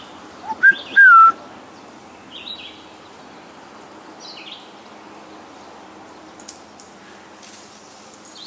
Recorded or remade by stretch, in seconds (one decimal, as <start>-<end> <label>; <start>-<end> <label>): 0.0-8.5 recorded